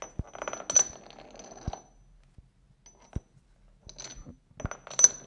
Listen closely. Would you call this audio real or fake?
real